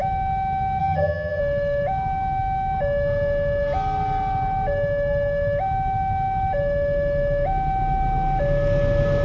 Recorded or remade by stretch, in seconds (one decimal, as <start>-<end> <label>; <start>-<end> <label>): 0.0-0.8 recorded; 0.8-1.4 remade; 1.4-9.2 recorded